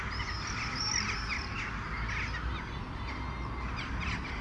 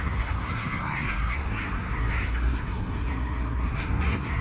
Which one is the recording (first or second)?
first